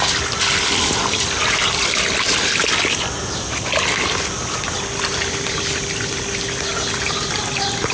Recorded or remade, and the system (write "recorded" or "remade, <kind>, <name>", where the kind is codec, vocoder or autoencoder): recorded